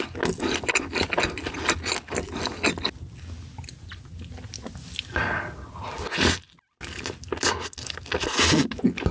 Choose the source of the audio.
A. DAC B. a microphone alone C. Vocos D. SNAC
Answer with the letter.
B